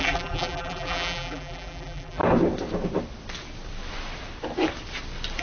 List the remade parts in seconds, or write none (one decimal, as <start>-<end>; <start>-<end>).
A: 0.0-2.2